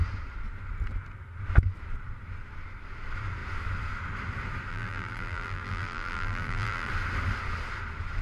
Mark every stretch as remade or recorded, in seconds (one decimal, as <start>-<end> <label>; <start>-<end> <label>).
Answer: 0.0-4.7 recorded; 4.7-6.9 remade; 6.9-8.2 recorded